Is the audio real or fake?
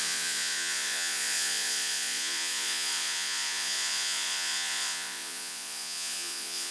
fake